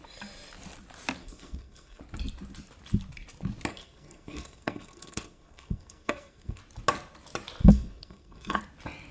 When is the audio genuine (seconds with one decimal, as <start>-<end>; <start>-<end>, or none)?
0.0-1.2; 2.0-3.7; 6.6-7.6; 8.6-9.1